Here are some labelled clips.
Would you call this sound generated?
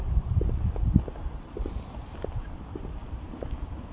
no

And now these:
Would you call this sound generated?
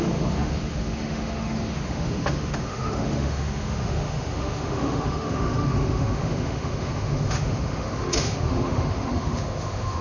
yes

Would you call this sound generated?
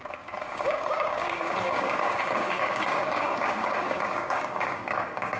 yes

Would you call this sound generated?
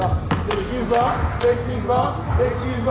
no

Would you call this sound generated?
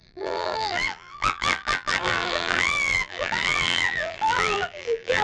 yes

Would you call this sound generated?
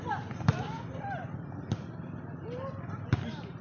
no